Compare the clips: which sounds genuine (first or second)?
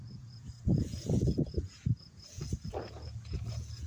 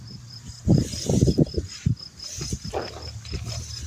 second